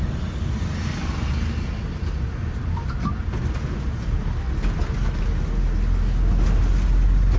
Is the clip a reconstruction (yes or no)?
no